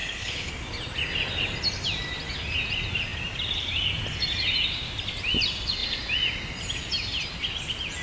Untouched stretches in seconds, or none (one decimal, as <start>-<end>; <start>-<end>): 0.5-8.0